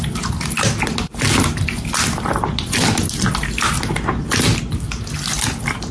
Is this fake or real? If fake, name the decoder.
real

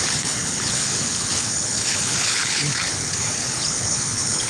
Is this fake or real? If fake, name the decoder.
fake, codec, HILCodec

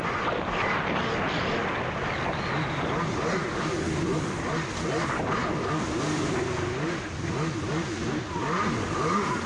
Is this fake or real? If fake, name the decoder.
real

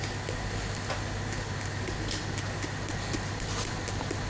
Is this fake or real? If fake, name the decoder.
real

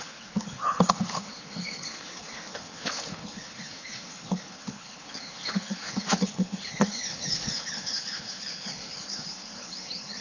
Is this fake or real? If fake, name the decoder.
fake, codec, HILCodec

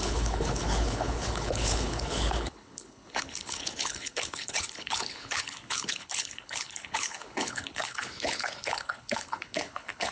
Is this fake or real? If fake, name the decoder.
fake, codec, HILCodec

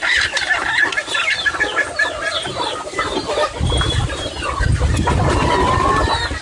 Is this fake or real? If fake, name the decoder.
real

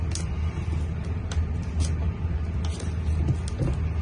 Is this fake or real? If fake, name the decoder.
real